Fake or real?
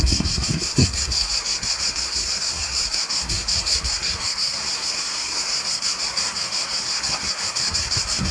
fake